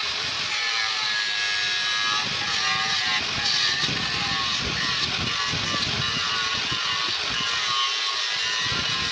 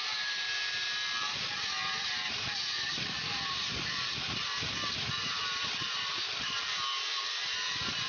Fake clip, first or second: second